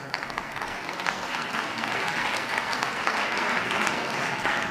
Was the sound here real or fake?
fake